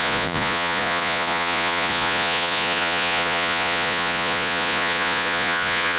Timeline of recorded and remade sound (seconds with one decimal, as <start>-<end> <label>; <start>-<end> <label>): 0.0-6.0 remade